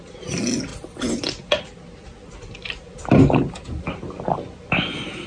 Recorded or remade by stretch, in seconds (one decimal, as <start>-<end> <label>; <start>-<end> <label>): 0.0-5.3 recorded